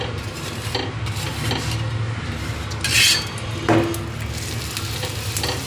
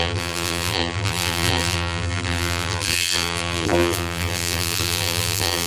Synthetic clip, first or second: second